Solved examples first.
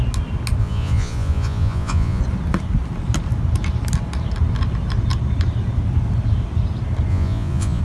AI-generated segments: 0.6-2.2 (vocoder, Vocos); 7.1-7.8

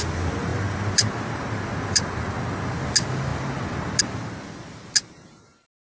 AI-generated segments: none

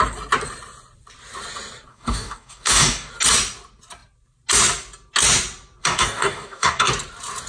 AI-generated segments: 1.9-3.1 (codec, DAC); 5.8-6.9

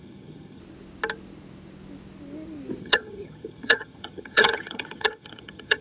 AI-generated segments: 0.0-0.6 (vocoder, HiFi-GAN); 2.8-5.8

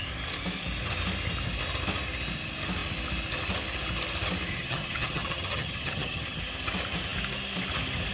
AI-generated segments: 4.5-6.4 (vocoder, HiFi-GAN)

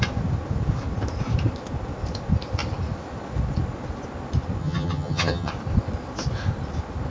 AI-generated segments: 4.6-5.5 (vocoder, HiFi-GAN)

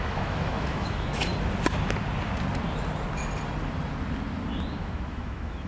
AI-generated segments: 0.0-1.3 (autoencoder, DAC-VAE); 4.7-5.7